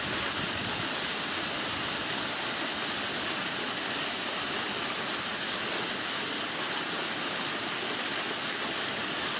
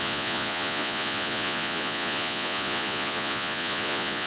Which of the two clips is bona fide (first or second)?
first